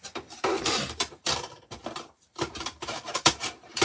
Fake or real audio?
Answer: fake